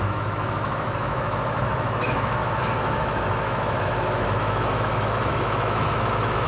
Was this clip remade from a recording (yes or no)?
yes